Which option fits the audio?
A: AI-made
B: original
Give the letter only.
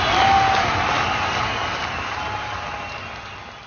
B